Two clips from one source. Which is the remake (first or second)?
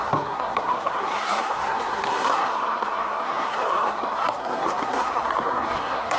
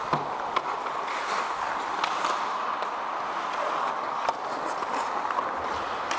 first